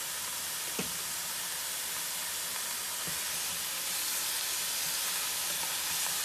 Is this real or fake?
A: real